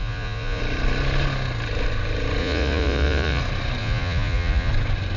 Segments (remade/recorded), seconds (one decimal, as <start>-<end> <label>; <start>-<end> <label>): 0.0-0.6 remade; 0.6-2.4 recorded; 2.4-3.4 remade; 3.4-3.8 recorded; 3.8-4.7 remade; 4.7-5.2 recorded